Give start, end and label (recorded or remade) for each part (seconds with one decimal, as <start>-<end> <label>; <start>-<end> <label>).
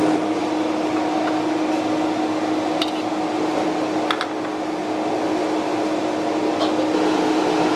0.0-7.8 recorded